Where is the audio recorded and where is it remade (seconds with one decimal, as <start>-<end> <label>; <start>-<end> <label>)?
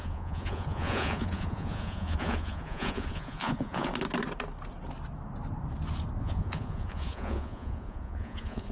0.0-3.9 remade; 3.9-6.2 recorded; 6.2-8.7 remade